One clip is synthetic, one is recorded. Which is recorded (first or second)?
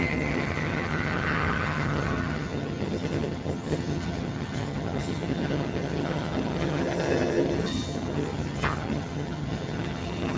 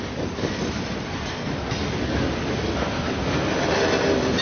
second